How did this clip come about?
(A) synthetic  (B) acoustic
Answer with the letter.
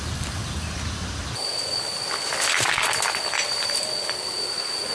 B